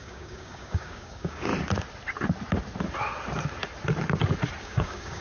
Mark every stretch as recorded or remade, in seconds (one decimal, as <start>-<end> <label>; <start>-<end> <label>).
0.0-1.5 remade; 1.5-4.6 recorded; 4.6-5.2 remade